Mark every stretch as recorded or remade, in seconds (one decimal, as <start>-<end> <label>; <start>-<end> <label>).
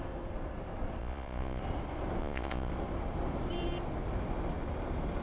0.0-1.0 recorded; 1.0-1.6 remade; 1.6-2.2 recorded; 2.2-2.7 remade; 2.7-5.2 recorded